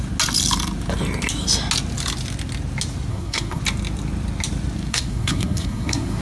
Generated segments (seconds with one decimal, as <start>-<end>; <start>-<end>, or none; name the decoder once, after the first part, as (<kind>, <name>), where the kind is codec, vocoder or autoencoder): 3.1-3.6 (codec, SNAC); 4.9-6.2